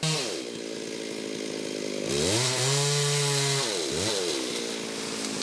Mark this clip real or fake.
real